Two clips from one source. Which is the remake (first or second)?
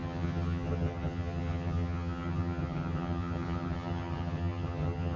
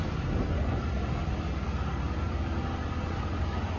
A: first